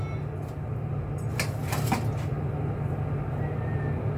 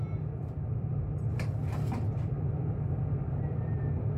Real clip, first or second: first